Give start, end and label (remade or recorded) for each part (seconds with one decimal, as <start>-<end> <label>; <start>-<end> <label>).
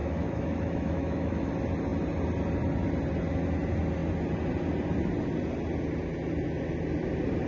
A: 0.0-1.5 remade; 1.5-7.5 recorded